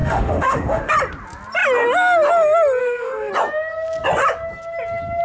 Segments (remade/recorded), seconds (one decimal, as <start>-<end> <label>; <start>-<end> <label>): 0.0-0.9 remade; 0.9-2.8 recorded; 2.8-3.3 remade; 3.3-5.2 recorded